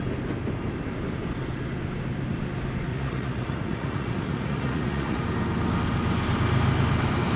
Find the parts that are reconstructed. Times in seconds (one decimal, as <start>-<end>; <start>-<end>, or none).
2.9-5.2